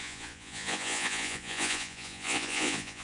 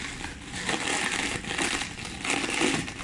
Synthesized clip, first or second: first